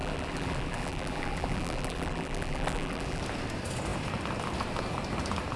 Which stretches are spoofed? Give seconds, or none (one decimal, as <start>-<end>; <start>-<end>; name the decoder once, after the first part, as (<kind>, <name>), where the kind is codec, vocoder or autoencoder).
0.0-3.2 (vocoder, BigVGAN v2)